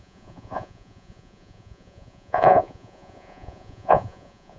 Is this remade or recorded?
remade